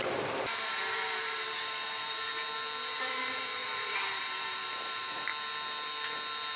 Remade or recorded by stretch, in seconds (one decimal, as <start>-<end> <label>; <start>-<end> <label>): 0.0-2.3 remade; 2.3-3.0 recorded; 3.0-5.3 remade; 5.3-6.6 recorded